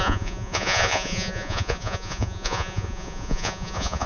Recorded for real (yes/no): no